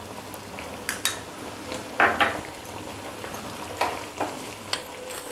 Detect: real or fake real